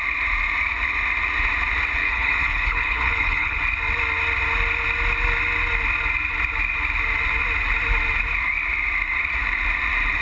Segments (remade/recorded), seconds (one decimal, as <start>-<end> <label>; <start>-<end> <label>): 0.0-2.0 recorded; 2.0-3.6 remade; 3.6-10.2 recorded